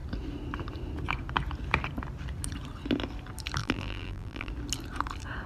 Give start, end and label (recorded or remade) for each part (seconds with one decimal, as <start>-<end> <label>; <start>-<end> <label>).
0.0-3.6 recorded; 3.6-4.5 remade; 4.5-5.5 recorded